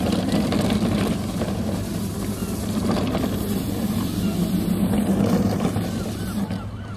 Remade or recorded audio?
recorded